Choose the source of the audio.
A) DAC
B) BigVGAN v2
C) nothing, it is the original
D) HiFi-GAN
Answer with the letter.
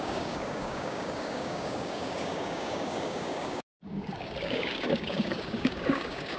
A